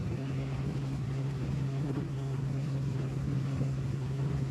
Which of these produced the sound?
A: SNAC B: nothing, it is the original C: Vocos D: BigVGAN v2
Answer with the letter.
A